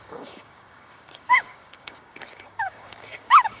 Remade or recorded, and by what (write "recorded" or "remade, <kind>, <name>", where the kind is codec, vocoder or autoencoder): remade, codec, DAC